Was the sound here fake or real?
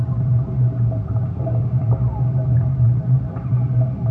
fake